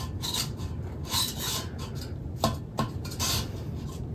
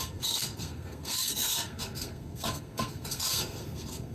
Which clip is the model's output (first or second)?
second